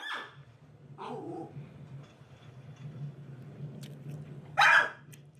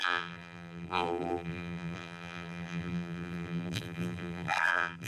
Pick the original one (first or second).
first